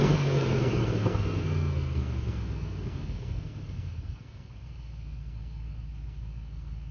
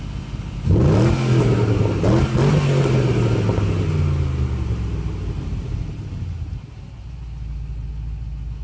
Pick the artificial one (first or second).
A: first